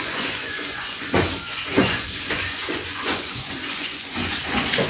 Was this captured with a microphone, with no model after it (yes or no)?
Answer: no